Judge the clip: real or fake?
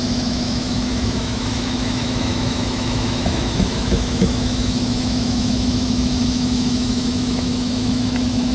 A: fake